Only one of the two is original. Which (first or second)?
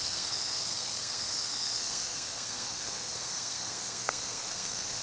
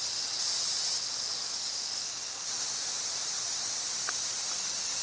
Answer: second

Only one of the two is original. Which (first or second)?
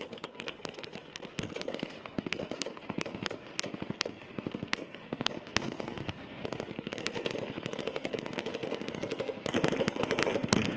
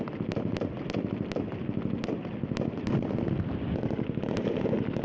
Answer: second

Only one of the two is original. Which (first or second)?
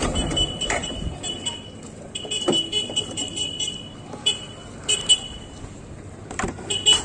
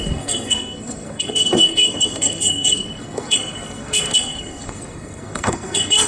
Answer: first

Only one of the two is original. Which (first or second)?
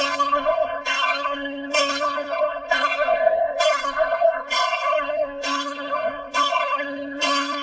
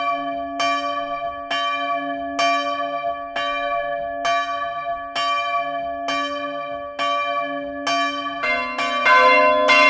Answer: second